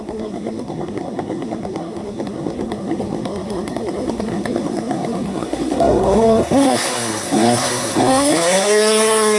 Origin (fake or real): fake